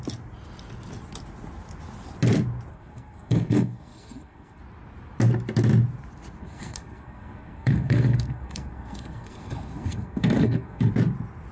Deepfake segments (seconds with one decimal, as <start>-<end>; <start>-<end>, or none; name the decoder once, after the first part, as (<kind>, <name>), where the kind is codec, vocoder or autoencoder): 2.7-4.6 (codec, SNAC); 6.4-10.9